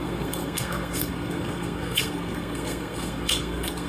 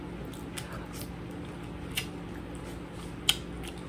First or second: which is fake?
first